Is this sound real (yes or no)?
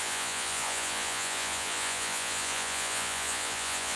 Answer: no